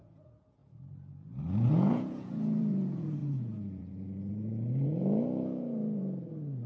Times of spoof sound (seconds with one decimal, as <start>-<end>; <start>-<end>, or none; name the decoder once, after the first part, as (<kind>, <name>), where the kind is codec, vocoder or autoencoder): 0.0-6.7 (vocoder, Vocos)